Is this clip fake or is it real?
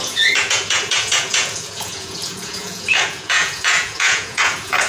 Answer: fake